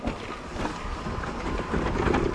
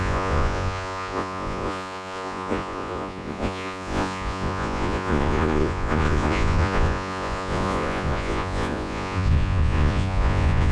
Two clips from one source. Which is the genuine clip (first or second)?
first